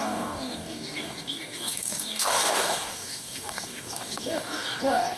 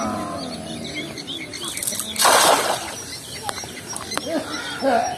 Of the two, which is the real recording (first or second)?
second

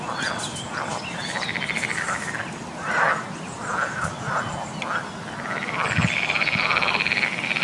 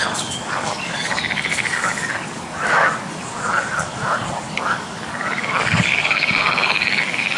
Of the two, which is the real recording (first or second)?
first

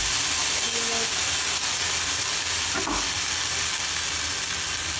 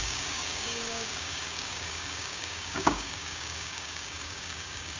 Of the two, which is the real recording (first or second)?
first